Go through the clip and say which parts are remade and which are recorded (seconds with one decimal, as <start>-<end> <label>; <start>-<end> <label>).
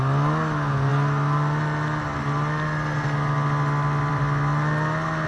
0.0-5.3 recorded